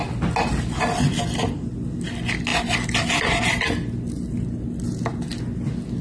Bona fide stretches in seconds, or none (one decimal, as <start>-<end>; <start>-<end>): 0.0-6.0